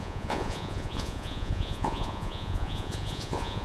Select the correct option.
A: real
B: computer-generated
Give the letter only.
B